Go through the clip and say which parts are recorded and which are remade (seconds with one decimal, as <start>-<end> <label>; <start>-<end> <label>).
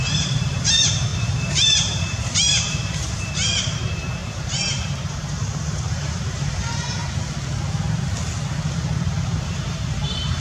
0.0-7.0 remade; 7.0-8.7 recorded; 8.7-10.4 remade